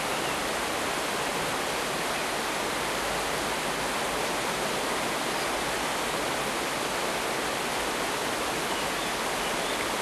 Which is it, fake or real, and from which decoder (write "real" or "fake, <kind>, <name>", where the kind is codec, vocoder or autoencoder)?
real